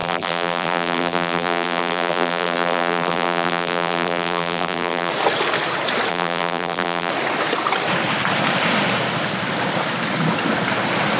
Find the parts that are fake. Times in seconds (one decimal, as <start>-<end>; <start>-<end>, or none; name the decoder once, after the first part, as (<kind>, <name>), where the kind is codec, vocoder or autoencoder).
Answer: 0.0-5.1 (vocoder, BigVGAN v2); 6.1-7.1